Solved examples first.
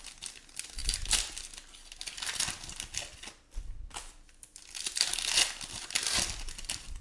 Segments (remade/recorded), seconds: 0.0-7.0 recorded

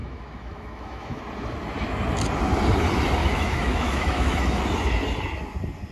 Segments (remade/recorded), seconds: 0.0-1.2 remade; 1.2-3.2 recorded; 3.2-4.6 remade; 4.6-5.9 recorded

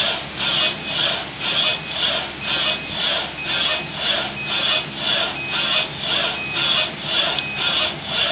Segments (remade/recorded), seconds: 0.0-8.3 recorded

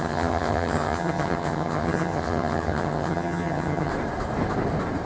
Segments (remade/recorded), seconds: 0.0-3.9 remade; 3.9-5.1 recorded

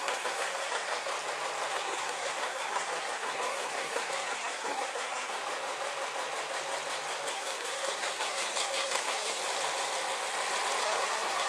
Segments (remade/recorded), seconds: 0.0-1.1 remade; 1.1-1.7 recorded; 1.7-5.4 remade; 5.4-7.3 recorded; 7.3-9.4 remade; 9.4-10.8 recorded; 10.8-11.5 remade

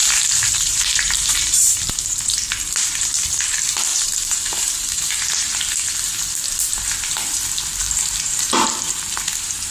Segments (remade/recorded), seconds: 0.0-2.3 remade; 2.3-3.9 recorded; 3.9-5.0 remade; 5.0-7.8 recorded; 7.8-8.7 remade; 8.7-9.7 recorded